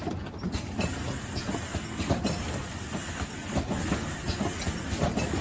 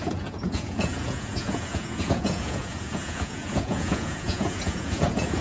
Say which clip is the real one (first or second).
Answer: first